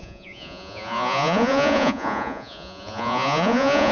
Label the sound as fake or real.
fake